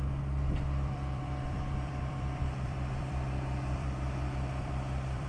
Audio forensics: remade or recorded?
remade